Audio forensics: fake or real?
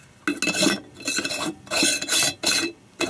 real